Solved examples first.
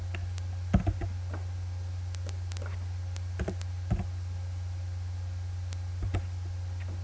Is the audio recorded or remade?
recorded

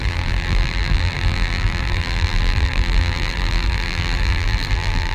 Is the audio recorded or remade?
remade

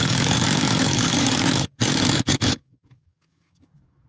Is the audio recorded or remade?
remade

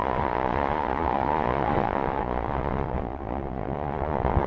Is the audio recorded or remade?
remade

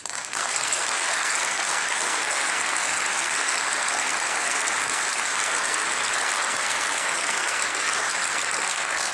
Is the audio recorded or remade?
remade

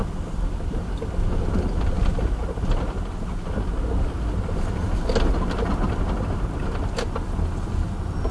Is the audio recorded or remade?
recorded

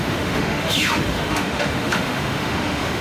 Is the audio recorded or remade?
remade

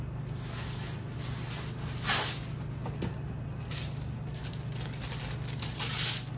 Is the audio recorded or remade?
recorded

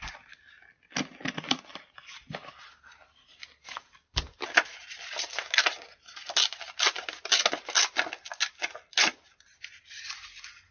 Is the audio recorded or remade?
recorded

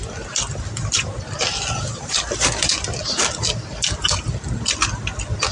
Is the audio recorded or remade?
recorded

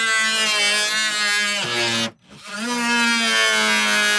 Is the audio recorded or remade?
recorded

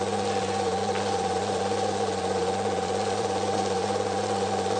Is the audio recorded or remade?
remade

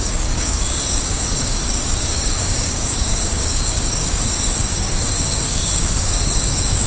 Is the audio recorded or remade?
remade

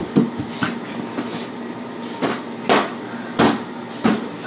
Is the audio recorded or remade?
recorded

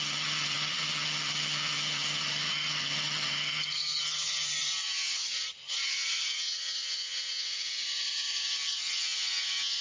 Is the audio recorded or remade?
remade